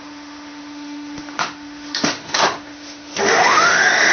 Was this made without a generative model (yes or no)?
no